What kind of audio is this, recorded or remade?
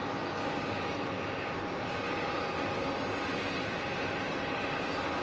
recorded